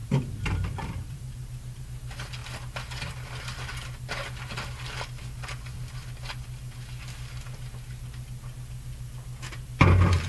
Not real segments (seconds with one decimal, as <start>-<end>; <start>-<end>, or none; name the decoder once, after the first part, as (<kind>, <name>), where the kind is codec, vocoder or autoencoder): 0.0-1.8 (vocoder, BigVGAN v2)